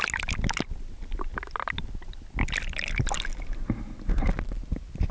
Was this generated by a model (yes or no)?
no